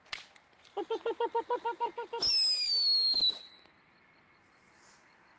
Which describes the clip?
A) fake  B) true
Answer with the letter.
B